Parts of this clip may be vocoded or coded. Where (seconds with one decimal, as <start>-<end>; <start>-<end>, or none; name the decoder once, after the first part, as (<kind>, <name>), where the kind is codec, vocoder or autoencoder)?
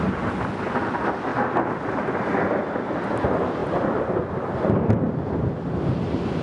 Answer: none